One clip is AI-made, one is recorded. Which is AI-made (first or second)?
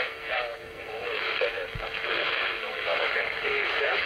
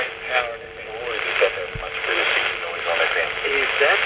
first